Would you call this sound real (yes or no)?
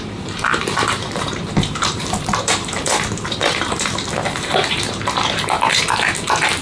no